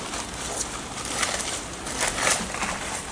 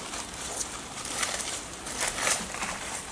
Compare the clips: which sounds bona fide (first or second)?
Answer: first